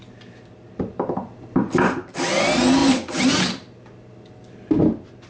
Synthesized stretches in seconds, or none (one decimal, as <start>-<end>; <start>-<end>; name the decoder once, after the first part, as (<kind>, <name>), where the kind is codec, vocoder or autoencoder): none